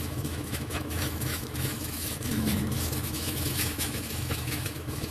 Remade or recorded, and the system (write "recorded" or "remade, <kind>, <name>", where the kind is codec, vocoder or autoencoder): remade, autoencoder, DAC-VAE